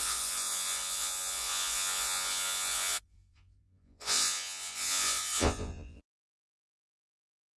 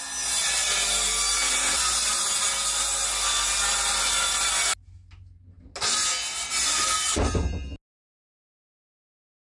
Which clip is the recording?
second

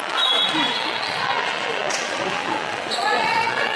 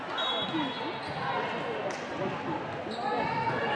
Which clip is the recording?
second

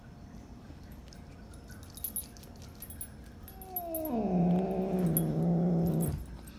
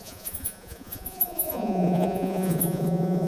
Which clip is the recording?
first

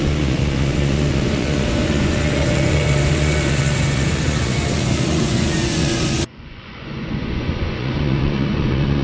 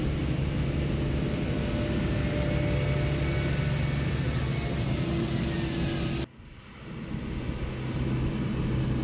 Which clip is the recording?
second